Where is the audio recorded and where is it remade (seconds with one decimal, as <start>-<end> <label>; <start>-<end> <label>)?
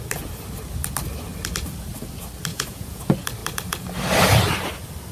0.0-2.5 recorded; 2.5-3.0 remade; 3.0-5.1 recorded